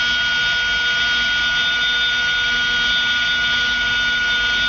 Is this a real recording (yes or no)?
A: yes